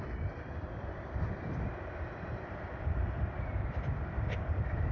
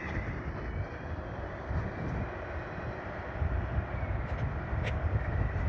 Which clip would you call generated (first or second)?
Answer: first